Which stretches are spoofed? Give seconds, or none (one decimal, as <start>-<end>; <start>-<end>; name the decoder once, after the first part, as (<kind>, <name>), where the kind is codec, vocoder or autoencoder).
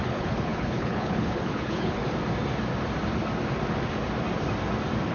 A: 0.0-2.0 (codec, HILCodec)